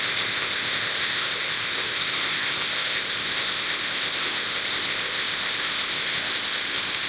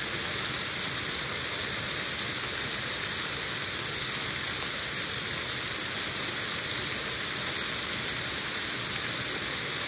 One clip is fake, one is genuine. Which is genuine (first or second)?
second